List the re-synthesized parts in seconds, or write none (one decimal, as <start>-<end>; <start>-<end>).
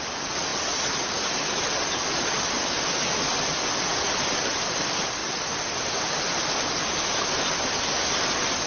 none